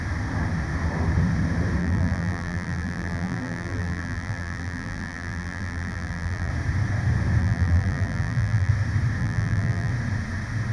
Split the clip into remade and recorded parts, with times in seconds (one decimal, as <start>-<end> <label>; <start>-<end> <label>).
0.0-1.8 recorded; 1.8-6.5 remade; 6.5-7.4 recorded; 7.4-8.7 remade; 8.7-9.2 recorded; 9.2-9.9 remade; 9.9-10.7 recorded